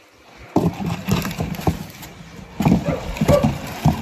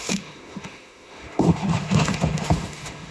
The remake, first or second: second